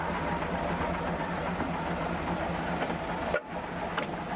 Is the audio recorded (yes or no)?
yes